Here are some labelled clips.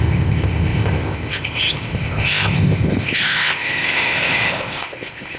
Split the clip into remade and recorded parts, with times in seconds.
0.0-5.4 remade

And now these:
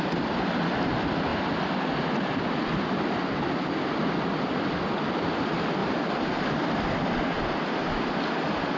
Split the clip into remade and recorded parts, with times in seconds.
0.0-5.8 recorded; 5.8-7.3 remade; 7.3-8.8 recorded

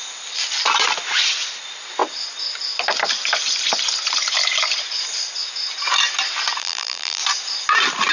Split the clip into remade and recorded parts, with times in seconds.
0.0-6.6 recorded; 6.6-7.2 remade; 7.2-8.1 recorded